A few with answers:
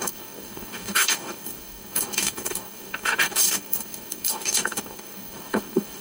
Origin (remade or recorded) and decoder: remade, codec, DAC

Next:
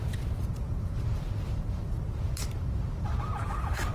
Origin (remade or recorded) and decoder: remade, vocoder, BigVGAN v2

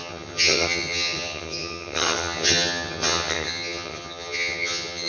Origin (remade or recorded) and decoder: remade, vocoder, HiFi-GAN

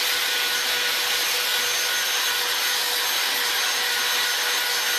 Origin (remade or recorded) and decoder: recorded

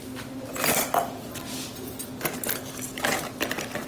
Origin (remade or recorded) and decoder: recorded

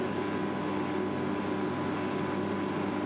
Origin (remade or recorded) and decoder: recorded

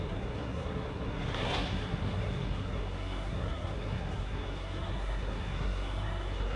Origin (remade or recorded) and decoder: remade, codec, SNAC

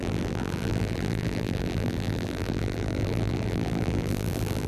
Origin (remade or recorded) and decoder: remade, vocoder, BigVGAN v2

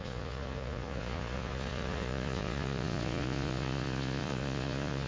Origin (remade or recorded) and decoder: remade, vocoder, Vocos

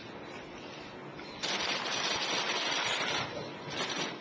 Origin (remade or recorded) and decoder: recorded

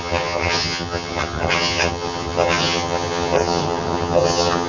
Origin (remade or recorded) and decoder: remade, vocoder, HiFi-GAN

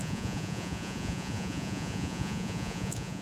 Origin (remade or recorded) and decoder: remade, vocoder, Vocos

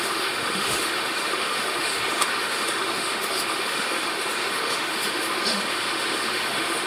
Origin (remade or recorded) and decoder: remade, autoencoder, DAC-VAE